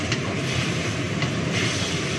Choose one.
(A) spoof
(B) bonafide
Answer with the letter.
A